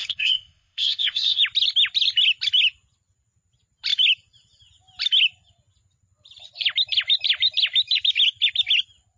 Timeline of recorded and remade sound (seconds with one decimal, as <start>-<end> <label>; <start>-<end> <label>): 0.0-1.4 remade; 1.4-9.2 recorded